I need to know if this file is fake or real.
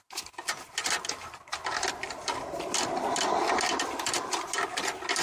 real